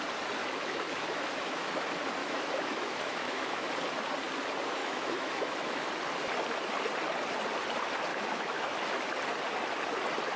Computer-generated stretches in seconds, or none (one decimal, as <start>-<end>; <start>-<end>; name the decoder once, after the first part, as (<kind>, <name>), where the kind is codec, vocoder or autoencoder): 0.4-1.7 (autoencoder, DAC-VAE); 2.2-3.7; 4.8-5.9; 8.1-8.8

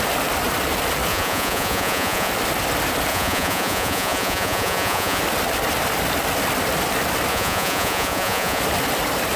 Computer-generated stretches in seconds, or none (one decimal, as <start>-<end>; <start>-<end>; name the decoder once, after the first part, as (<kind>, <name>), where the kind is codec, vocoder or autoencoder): 1.1-2.3 (vocoder, Vocos); 3.1-5.2; 7.3-8.6

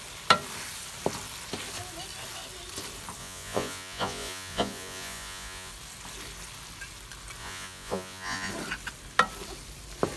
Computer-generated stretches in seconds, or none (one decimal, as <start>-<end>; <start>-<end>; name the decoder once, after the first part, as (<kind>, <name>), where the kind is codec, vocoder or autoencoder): 3.2-5.7 (vocoder, Vocos); 7.4-8.5

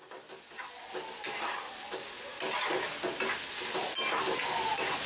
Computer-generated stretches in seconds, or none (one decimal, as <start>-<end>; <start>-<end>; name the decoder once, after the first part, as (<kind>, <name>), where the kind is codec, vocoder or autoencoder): none

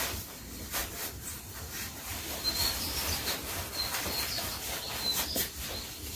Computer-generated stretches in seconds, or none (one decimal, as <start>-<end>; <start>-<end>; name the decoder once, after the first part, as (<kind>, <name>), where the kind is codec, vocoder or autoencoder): 0.8-3.7 (vocoder, BigVGAN v2)

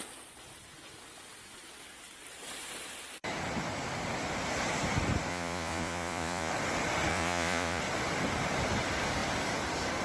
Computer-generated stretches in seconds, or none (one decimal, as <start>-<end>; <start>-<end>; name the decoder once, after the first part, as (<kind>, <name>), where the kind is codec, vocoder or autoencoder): 5.3-6.5 (vocoder, Vocos); 7.1-7.8

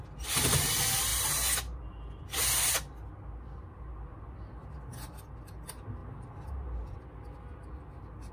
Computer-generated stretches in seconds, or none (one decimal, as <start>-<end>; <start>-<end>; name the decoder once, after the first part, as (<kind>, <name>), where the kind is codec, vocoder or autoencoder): none